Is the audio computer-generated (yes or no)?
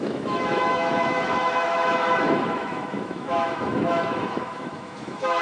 yes